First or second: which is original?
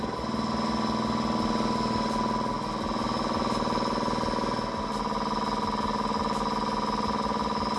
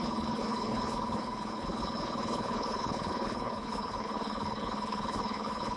first